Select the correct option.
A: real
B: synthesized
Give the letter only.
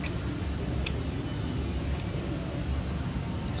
A